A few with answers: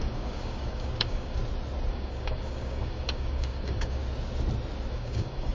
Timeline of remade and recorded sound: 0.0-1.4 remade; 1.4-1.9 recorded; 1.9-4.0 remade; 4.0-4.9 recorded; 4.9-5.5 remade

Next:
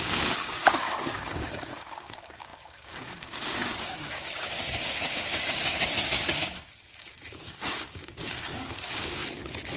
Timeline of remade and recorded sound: 0.0-9.2 remade; 9.2-9.8 recorded

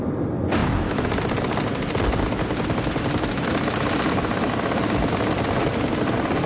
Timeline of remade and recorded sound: 0.0-6.5 recorded